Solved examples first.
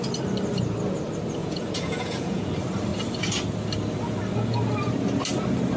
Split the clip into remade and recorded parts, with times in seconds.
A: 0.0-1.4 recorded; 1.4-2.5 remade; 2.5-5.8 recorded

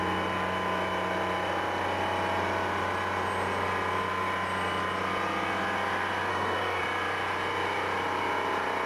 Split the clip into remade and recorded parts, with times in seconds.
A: 0.0-6.3 recorded; 6.3-6.8 remade; 6.8-8.9 recorded

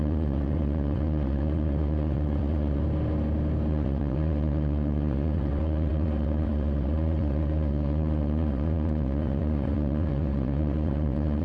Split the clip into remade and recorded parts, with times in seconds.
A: 0.0-2.8 remade; 2.8-3.7 recorded; 3.7-11.4 remade

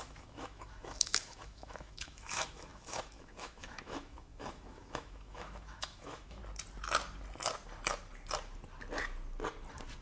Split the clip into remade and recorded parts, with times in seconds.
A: 0.0-6.4 remade; 6.4-10.0 recorded

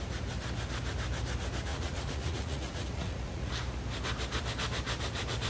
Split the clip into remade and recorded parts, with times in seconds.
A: 0.0-1.7 recorded; 1.7-3.5 remade; 3.5-5.5 recorded

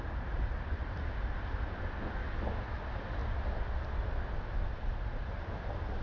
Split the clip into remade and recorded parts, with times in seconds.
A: 0.0-6.0 recorded

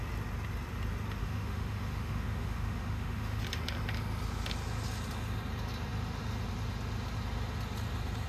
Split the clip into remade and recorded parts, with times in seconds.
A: 0.0-1.2 recorded; 1.2-3.4 remade; 3.4-8.3 recorded

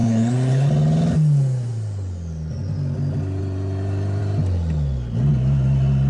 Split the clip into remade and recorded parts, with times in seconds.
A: 0.0-0.7 remade; 0.7-6.1 recorded